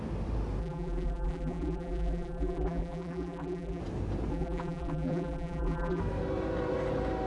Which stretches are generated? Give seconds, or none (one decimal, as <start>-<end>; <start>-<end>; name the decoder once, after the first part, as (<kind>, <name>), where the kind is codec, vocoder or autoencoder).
0.6-3.8 (vocoder, BigVGAN v2); 4.3-6.0